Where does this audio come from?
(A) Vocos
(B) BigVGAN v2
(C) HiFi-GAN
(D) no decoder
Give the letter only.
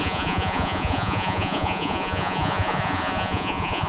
A